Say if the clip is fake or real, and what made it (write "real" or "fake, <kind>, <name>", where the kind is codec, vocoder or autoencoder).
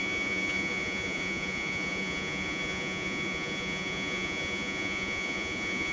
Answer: fake, vocoder, Vocos